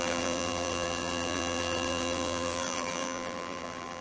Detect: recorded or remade remade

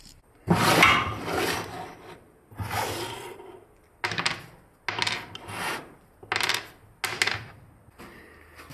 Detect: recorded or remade recorded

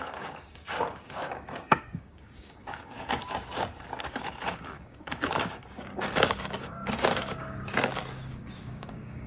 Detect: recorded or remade remade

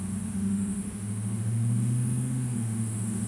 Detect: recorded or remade remade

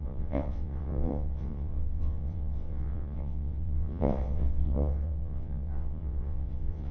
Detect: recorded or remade remade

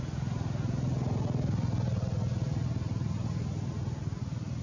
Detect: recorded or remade recorded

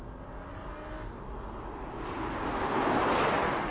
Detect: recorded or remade recorded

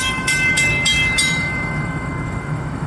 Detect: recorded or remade remade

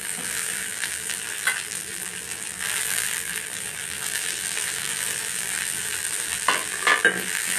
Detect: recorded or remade remade